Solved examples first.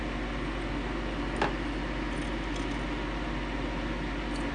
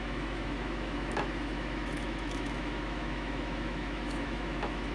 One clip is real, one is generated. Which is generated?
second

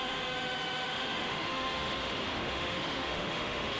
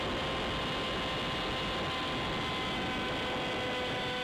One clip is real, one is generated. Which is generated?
first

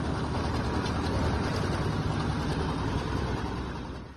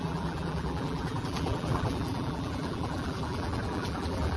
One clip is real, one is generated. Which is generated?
second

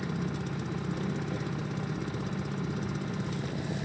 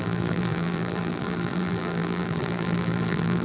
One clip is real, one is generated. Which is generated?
second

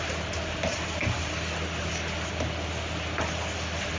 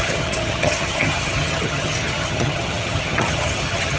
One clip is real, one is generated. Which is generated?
second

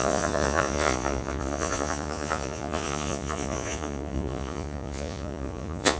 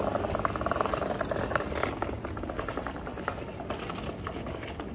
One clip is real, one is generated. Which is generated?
first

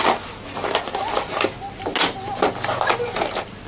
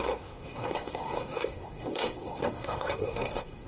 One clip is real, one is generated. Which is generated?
second